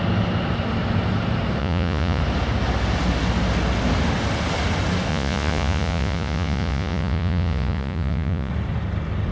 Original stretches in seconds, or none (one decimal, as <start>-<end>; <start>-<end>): 0.0-1.6; 2.2-5.1; 8.5-9.3